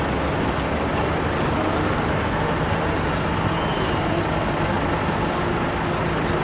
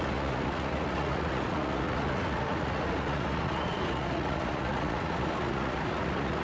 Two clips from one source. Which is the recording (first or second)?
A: first